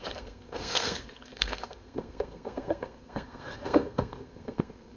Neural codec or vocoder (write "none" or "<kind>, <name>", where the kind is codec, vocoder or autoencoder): codec, SNAC